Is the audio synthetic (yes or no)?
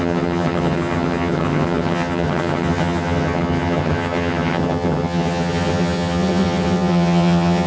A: yes